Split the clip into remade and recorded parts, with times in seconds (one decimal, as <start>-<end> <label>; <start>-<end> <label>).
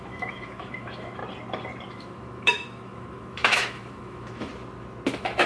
0.0-1.2 remade; 1.2-1.9 recorded; 1.9-4.5 remade; 4.5-5.1 recorded; 5.1-5.5 remade